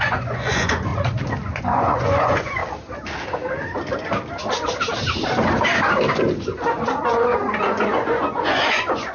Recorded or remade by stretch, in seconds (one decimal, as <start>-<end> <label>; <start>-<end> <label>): 0.0-0.9 remade; 0.9-1.5 recorded; 1.5-2.6 remade; 2.6-7.1 recorded; 7.1-9.1 remade